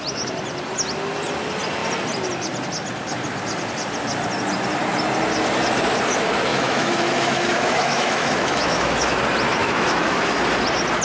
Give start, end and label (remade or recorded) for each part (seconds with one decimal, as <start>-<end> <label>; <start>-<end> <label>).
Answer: 0.0-6.5 recorded; 6.5-9.2 remade; 9.2-9.6 recorded; 9.6-10.4 remade; 10.4-11.0 recorded